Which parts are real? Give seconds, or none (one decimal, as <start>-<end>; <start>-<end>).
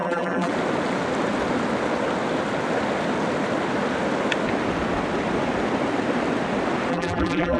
0.5-6.9